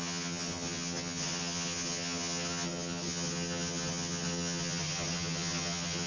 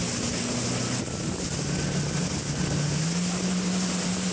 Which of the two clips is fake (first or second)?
first